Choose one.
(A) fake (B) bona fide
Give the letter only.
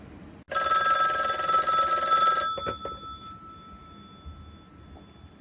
B